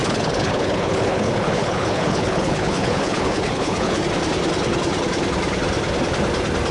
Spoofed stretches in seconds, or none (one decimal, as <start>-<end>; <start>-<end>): 0.0-4.0